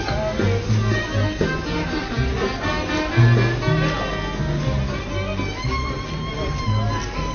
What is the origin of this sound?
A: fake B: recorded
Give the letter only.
B